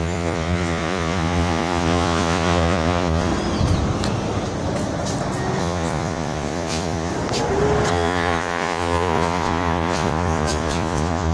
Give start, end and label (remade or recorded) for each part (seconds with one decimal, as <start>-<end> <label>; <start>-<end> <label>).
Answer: 0.0-3.3 remade; 3.3-5.6 recorded; 5.6-7.1 remade; 7.1-7.9 recorded; 7.9-11.3 remade